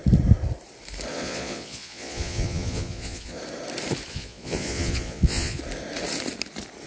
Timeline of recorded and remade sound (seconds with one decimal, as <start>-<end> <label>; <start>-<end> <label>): 0.0-1.1 recorded; 1.1-3.4 remade; 3.4-4.1 recorded; 4.1-5.6 remade; 5.6-6.9 recorded